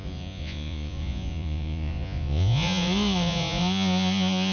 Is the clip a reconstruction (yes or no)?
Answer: yes